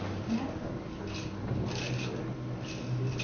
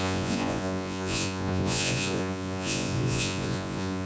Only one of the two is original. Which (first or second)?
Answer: first